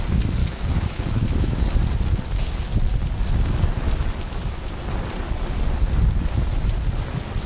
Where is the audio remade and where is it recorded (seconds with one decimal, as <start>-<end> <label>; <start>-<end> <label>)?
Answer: 0.0-0.4 recorded; 0.4-1.6 remade; 1.6-7.5 recorded